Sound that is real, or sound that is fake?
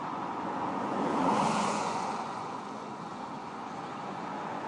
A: fake